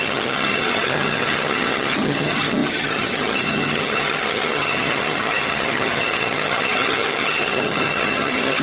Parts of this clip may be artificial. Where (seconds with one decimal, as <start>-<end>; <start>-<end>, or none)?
0.0-8.6